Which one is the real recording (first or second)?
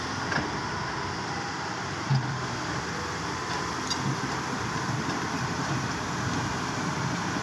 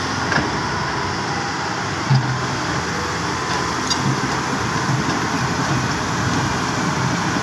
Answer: second